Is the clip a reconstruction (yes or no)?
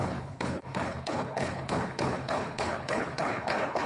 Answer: yes